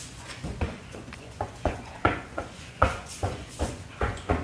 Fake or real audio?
fake